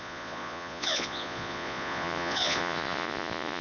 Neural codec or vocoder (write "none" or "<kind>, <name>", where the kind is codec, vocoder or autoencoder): vocoder, Vocos